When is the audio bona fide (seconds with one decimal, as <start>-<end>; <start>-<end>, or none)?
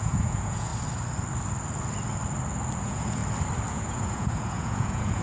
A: 0.7-2.8; 3.2-3.7